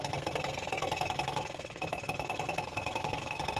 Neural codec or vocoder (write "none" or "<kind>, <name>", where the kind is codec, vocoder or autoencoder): codec, SNAC